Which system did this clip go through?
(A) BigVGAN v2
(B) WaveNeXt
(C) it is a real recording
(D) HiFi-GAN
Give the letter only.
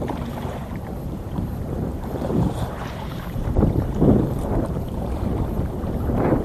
A